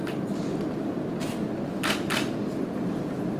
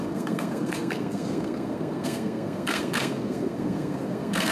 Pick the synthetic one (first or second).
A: second